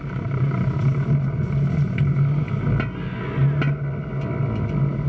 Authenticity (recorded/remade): recorded